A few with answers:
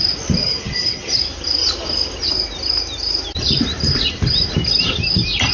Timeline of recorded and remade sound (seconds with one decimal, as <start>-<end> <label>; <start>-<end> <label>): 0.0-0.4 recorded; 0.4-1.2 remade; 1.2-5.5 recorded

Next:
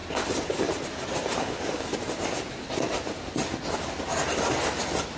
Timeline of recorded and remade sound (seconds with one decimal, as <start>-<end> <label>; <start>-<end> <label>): 0.0-1.4 recorded; 1.4-1.9 remade; 1.9-5.2 recorded

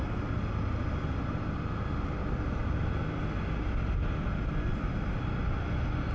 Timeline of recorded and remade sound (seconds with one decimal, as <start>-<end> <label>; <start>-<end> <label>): 0.0-6.1 recorded

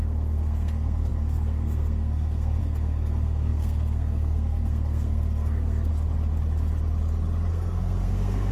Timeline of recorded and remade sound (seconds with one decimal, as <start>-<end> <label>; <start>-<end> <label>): 0.0-5.9 remade; 5.9-7.5 recorded; 7.5-8.5 remade

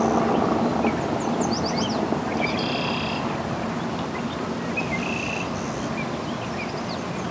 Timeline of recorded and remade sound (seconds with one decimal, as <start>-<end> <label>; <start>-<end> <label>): 0.0-7.3 recorded

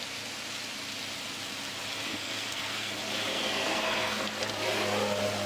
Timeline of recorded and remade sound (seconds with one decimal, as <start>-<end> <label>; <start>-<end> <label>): 0.0-2.1 recorded; 2.1-2.9 remade; 2.9-3.3 recorded; 3.3-4.4 remade; 4.4-5.5 recorded

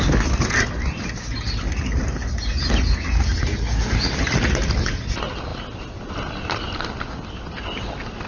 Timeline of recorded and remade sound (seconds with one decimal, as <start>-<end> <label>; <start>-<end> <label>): 0.0-8.3 recorded

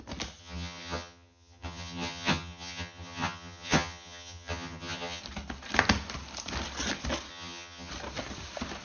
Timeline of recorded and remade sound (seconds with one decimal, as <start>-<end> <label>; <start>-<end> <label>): 0.0-0.4 recorded; 0.4-5.2 remade; 5.2-7.3 recorded; 7.3-7.9 remade; 7.9-8.8 recorded